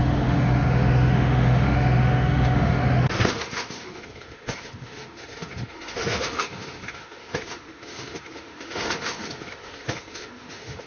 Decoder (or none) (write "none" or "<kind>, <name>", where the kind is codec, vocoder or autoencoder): autoencoder, DAC-VAE